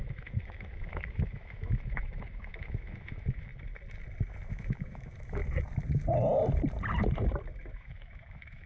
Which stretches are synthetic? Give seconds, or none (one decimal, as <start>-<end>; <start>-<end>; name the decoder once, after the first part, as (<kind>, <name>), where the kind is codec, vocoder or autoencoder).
0.0-3.5 (autoencoder, DAC-VAE); 4.5-5.4; 7.7-8.7